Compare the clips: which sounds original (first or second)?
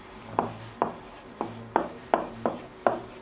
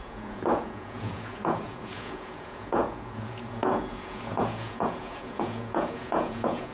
first